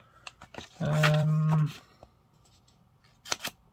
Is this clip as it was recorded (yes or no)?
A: no